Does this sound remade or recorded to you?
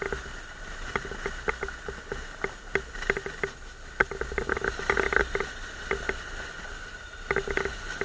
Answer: recorded